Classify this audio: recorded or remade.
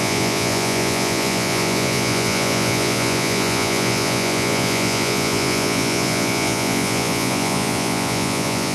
remade